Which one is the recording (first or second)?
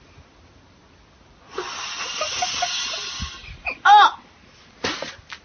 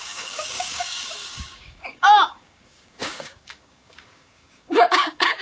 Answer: first